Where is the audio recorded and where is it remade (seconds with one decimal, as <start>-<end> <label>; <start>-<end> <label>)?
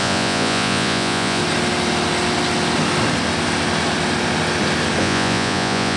0.0-1.4 remade; 1.4-5.0 recorded; 5.0-6.0 remade